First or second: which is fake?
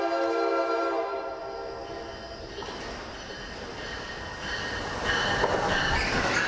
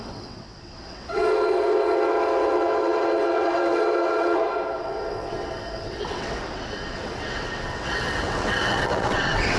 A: second